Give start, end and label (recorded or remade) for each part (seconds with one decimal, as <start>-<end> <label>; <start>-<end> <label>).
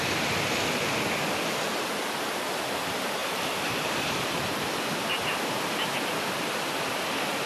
0.0-7.5 recorded